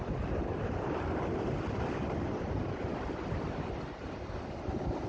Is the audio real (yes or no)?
yes